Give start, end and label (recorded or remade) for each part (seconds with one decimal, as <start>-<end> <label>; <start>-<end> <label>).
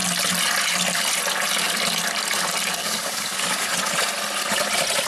0.0-2.8 recorded; 2.8-3.7 remade; 3.7-5.1 recorded